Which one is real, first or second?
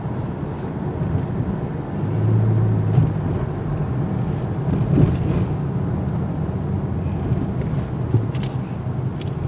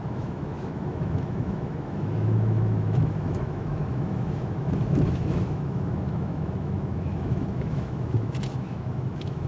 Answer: first